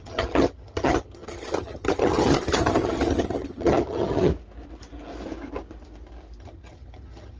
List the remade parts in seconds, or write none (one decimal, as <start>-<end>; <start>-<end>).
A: 0.0-4.3; 6.4-7.4

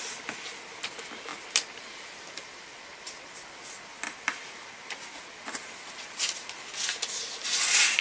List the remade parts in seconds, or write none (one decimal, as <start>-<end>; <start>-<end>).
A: none